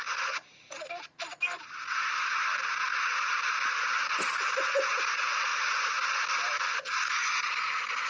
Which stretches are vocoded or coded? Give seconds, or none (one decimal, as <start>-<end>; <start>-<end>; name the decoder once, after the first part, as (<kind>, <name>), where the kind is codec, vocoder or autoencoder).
none